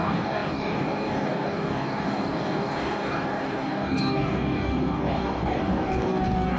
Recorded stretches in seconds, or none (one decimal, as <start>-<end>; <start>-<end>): none